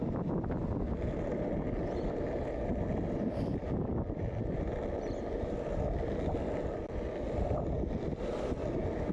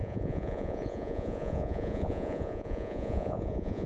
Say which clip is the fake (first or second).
second